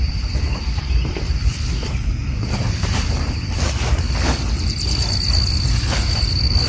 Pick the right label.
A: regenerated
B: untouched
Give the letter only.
A